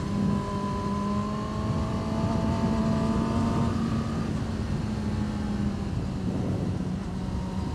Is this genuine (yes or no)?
yes